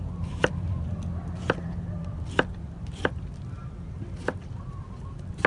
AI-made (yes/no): yes